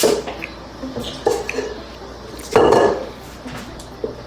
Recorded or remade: recorded